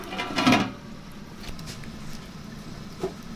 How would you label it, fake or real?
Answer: real